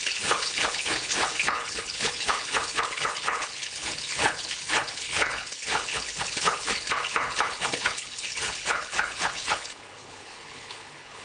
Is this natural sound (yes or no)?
no